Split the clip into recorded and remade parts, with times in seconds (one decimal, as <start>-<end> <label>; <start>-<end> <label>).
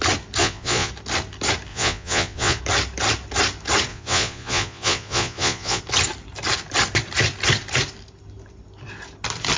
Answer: 0.0-0.4 recorded; 0.4-0.9 remade; 0.9-1.7 recorded; 1.7-2.6 remade; 2.6-3.9 recorded; 3.9-5.8 remade; 5.8-9.6 recorded